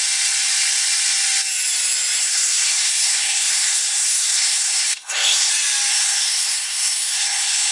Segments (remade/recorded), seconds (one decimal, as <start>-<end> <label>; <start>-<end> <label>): 0.0-2.2 recorded; 2.2-5.5 remade; 5.5-5.9 recorded; 5.9-7.7 remade

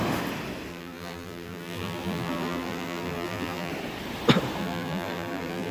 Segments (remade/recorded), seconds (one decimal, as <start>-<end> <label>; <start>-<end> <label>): 0.0-0.7 recorded; 0.7-3.7 remade; 3.7-4.6 recorded; 4.6-5.7 remade